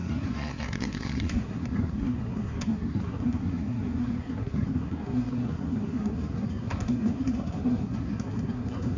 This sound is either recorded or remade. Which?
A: remade